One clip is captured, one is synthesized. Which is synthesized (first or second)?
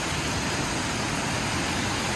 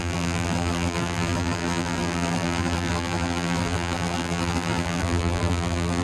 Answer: second